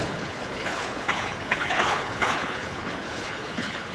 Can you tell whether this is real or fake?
fake